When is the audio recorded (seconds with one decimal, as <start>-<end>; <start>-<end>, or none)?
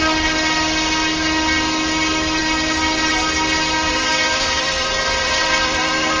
0.0-3.9; 4.6-6.2